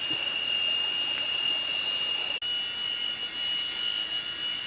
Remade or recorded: recorded